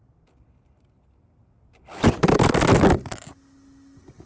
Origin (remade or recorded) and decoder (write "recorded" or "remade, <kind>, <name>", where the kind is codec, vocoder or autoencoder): recorded